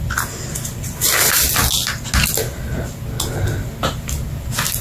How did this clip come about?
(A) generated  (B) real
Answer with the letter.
B